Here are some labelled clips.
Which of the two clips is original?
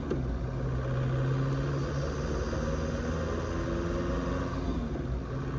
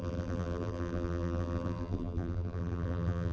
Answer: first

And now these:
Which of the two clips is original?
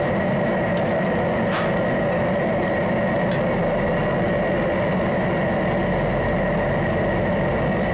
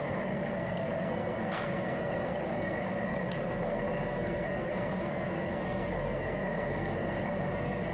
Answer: first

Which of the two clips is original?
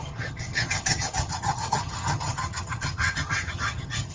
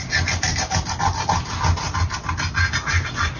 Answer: second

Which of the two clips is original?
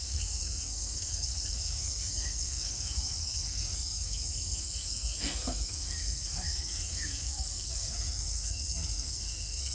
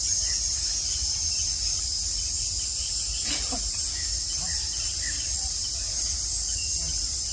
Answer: second